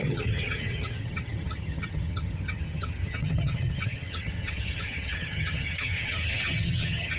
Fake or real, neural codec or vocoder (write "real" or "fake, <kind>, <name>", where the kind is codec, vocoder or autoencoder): fake, vocoder, HiFi-GAN